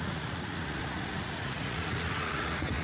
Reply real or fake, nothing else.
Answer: fake